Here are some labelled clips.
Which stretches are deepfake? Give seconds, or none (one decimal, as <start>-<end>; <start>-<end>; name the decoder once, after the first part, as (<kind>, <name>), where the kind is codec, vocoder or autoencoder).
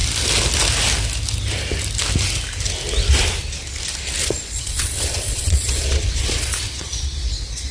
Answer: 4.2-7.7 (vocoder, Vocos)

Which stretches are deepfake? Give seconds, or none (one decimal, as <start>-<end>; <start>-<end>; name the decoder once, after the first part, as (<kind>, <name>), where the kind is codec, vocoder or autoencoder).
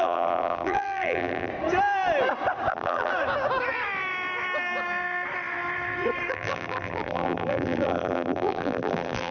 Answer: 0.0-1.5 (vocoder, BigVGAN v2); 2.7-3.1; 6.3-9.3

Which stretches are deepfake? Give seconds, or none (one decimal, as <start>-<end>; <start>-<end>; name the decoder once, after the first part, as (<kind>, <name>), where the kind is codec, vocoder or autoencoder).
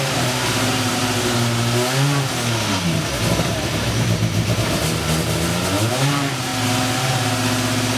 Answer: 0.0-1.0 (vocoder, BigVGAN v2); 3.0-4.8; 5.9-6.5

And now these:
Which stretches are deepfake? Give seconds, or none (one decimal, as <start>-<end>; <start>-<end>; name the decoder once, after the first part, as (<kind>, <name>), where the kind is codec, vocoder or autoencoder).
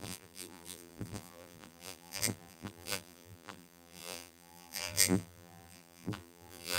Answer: 0.0-6.8 (vocoder, BigVGAN v2)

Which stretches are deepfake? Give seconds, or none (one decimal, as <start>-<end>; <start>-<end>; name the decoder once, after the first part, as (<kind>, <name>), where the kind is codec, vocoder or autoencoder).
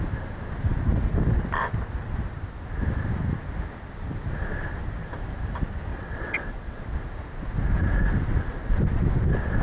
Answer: 5.9-6.8 (vocoder, WaveNeXt)